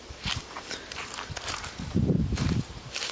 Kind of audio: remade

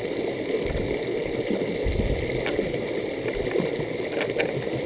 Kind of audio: recorded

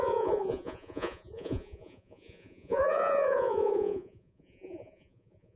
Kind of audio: remade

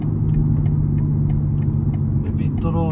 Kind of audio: recorded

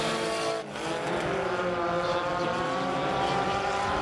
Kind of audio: recorded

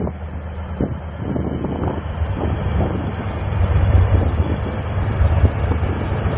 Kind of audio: recorded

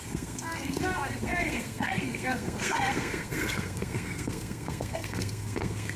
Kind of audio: remade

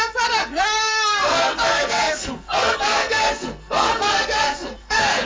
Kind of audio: remade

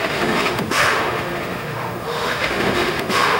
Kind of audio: remade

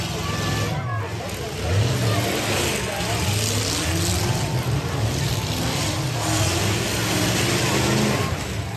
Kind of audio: recorded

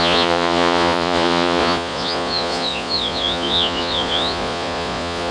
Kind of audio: remade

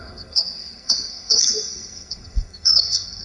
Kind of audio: remade